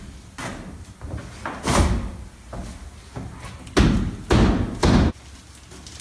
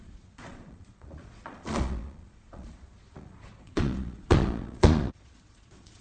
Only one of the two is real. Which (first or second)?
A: first